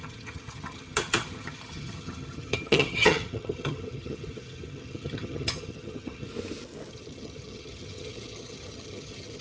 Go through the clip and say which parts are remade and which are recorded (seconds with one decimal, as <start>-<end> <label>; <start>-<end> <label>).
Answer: 0.0-6.3 remade; 6.3-6.9 recorded; 6.9-9.4 remade